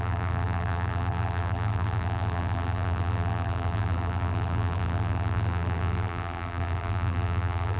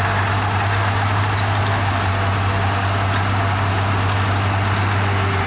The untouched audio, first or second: second